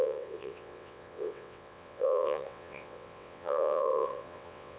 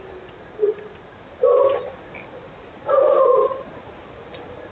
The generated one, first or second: first